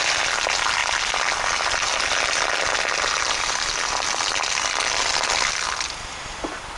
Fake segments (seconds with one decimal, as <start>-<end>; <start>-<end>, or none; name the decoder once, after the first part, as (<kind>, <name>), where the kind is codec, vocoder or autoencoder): none